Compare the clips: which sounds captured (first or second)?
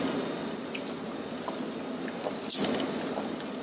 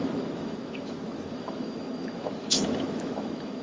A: first